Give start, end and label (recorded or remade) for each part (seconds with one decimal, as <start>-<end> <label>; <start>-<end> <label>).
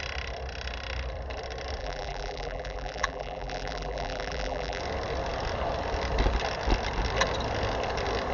0.0-1.8 recorded; 1.8-4.8 remade; 4.8-8.3 recorded